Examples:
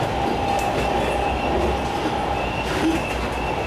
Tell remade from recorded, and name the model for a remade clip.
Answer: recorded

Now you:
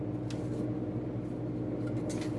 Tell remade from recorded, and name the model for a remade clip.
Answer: recorded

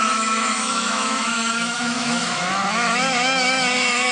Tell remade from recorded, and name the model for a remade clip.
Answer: remade, autoencoder, DAC-VAE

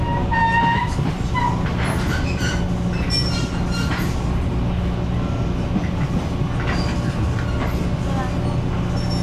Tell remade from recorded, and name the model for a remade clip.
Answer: recorded